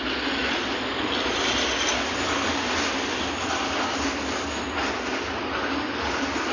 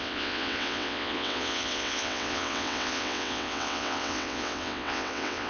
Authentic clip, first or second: first